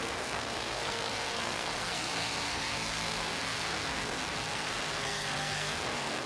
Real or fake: fake